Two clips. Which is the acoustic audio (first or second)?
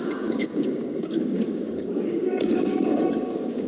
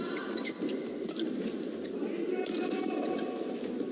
second